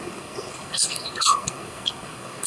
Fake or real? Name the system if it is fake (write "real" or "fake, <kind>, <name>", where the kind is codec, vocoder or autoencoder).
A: fake, codec, SNAC